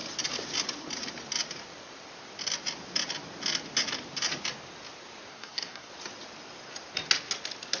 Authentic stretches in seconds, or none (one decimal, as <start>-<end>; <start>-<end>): 0.0-5.3; 5.9-7.8